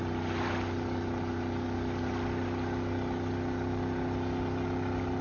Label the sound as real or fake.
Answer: real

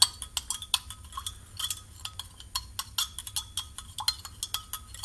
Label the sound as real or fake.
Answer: real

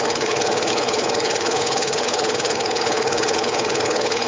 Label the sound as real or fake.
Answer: fake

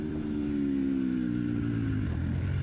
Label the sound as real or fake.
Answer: real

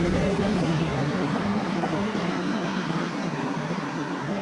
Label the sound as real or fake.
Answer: fake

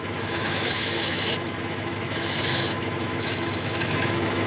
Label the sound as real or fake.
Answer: fake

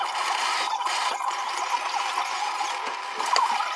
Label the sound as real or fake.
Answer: real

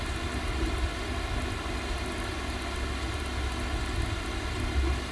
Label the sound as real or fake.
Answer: real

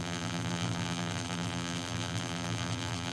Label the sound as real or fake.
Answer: fake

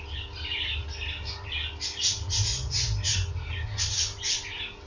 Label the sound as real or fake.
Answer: real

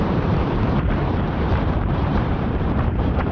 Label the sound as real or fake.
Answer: fake